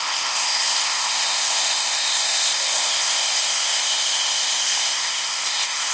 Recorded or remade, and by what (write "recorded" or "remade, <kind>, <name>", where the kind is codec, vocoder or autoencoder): remade, codec, ZipCodec